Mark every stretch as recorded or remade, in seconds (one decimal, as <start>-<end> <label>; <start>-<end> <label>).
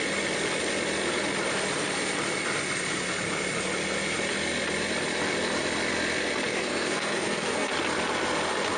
0.0-6.6 recorded; 6.6-7.7 remade; 7.7-8.8 recorded